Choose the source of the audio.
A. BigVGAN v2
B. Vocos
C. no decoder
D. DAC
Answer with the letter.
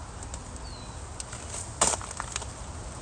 C